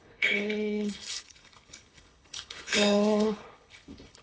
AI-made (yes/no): yes